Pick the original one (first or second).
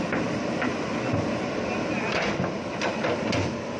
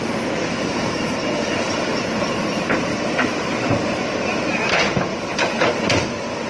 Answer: first